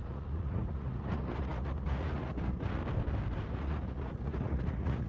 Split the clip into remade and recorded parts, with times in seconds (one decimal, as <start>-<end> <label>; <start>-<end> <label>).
0.0-2.8 remade; 2.8-3.5 recorded; 3.5-5.1 remade